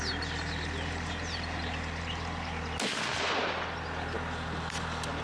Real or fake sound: real